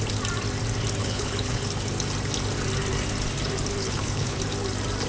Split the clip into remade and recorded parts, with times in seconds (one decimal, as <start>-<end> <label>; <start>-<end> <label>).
0.0-1.0 recorded; 1.0-1.7 remade; 1.7-3.8 recorded; 3.8-4.4 remade; 4.4-5.1 recorded